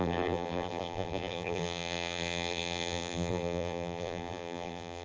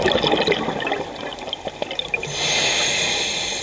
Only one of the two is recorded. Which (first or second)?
second